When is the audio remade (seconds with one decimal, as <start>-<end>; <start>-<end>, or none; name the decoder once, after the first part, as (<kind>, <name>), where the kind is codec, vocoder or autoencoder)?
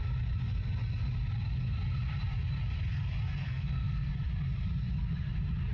3.4-4.1 (codec, SNAC)